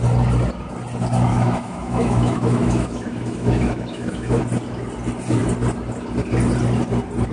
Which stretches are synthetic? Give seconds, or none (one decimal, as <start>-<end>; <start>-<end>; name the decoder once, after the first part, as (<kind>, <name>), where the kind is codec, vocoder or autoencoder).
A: 1.3-4.4 (autoencoder, DAC-VAE)